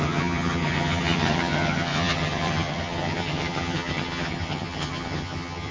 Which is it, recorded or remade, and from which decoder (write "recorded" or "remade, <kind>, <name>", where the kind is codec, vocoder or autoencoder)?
remade, vocoder, HiFi-GAN